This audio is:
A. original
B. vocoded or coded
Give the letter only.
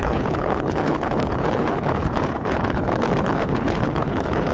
B